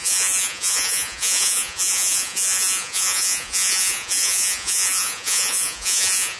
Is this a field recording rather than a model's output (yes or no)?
no